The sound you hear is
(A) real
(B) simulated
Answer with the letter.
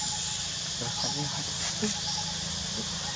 A